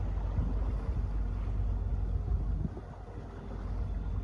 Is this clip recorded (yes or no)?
yes